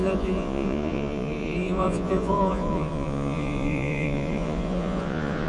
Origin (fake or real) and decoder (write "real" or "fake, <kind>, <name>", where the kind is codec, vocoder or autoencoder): fake, vocoder, Vocos